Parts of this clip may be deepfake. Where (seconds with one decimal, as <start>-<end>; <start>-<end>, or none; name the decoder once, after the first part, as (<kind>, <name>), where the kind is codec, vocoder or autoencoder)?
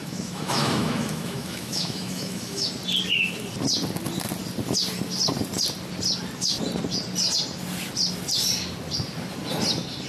0.0-2.7 (autoencoder, DAC-VAE)